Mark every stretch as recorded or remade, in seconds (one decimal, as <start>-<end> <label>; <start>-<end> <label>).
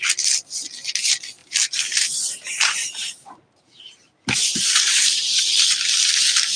0.0-1.4 recorded; 1.4-5.4 remade; 5.4-6.6 recorded